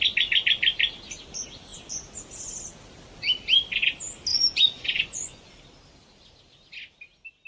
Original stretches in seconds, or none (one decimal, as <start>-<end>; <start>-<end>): 0.0-4.3; 5.5-7.5